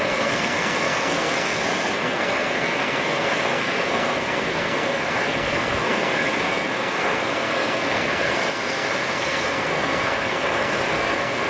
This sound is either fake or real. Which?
fake